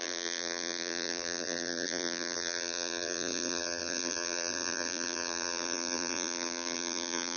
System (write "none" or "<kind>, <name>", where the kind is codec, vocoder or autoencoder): vocoder, BigVGAN v2